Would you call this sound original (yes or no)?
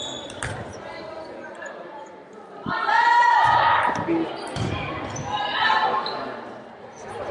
yes